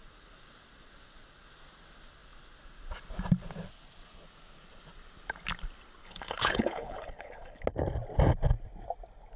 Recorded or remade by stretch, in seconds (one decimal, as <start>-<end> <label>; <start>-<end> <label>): 0.0-6.0 recorded; 6.0-7.6 remade; 7.6-9.4 recorded